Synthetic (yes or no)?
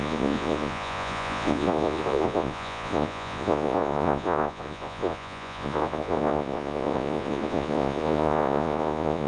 yes